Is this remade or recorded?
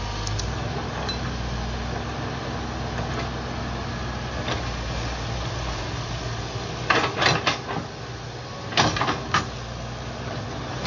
recorded